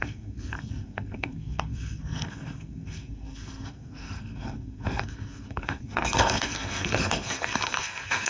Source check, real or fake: fake